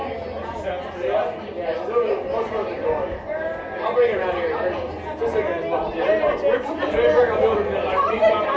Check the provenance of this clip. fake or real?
real